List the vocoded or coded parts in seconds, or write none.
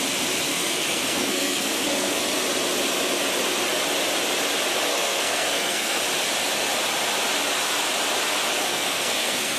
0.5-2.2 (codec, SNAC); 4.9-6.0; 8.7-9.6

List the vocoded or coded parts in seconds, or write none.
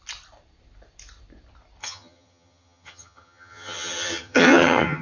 1.8-5.0 (vocoder, HiFi-GAN)